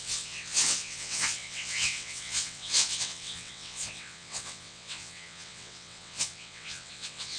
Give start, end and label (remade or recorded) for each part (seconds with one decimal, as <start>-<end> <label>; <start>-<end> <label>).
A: 0.0-7.4 remade